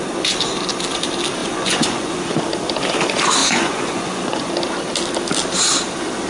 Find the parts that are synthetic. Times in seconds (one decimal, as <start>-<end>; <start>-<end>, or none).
1.4-2.4; 3.4-4.5